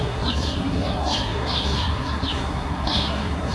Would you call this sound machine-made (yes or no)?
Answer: yes